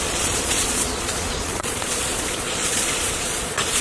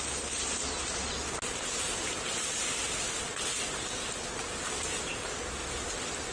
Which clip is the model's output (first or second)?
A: first